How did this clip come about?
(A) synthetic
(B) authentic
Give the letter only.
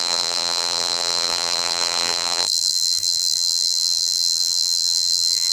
A